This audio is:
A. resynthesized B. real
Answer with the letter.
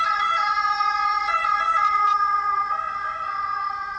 A